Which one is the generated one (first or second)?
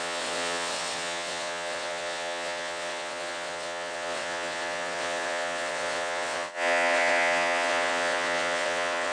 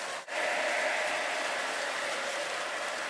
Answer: first